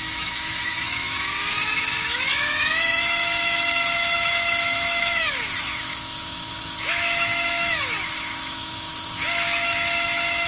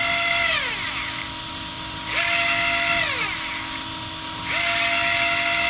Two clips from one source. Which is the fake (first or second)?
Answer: first